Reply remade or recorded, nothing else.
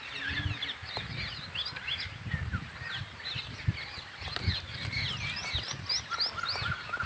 recorded